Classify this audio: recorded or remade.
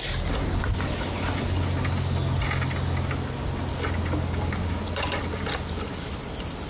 recorded